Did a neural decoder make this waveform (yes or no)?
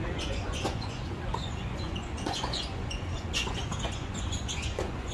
yes